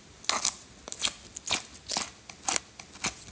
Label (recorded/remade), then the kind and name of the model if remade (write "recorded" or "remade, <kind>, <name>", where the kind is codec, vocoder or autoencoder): recorded